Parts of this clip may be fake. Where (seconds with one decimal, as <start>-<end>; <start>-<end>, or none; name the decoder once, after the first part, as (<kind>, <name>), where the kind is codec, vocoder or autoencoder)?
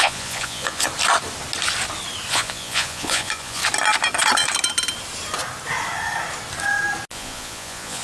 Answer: 0.0-0.9 (vocoder, Vocos); 2.3-3.6; 7.1-8.0